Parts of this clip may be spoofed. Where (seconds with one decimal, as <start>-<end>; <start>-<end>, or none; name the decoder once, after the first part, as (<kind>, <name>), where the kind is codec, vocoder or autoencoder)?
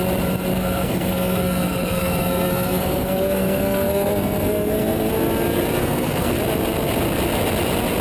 0.5-5.1 (codec, SNAC); 5.8-6.4